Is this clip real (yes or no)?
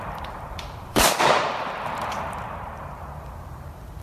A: no